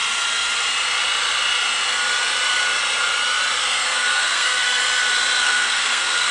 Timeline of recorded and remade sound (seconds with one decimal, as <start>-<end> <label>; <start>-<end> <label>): 0.0-3.6 recorded; 3.6-4.8 remade; 4.8-5.4 recorded; 5.4-6.3 remade